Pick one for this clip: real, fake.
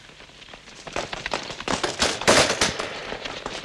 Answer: fake